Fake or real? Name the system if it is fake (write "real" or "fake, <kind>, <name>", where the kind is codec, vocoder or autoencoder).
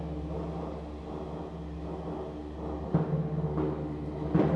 real